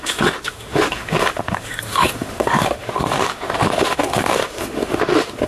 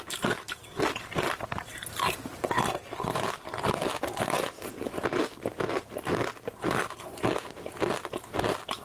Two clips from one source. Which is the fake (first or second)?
first